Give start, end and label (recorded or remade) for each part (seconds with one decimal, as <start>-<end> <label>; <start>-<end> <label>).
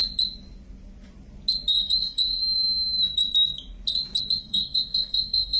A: 0.0-1.7 recorded; 1.7-2.4 remade; 2.4-4.4 recorded; 4.4-5.6 remade